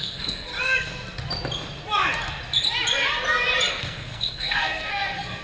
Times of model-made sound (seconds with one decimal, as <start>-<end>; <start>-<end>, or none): 0.0-0.5; 3.7-5.4